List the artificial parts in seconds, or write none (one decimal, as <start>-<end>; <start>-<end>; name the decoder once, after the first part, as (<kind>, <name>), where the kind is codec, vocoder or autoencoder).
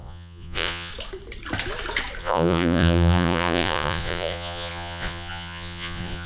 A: 0.0-0.9 (vocoder, Vocos); 2.2-6.3